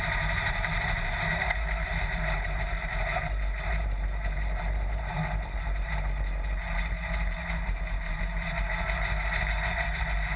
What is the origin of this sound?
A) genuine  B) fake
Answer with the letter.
B